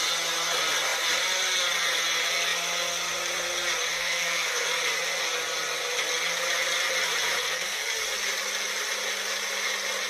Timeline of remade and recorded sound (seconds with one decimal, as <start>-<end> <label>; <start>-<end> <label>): 0.0-3.9 recorded; 3.9-4.7 remade; 4.7-7.4 recorded; 7.4-7.9 remade; 7.9-10.1 recorded